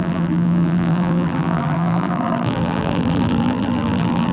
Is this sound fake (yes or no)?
yes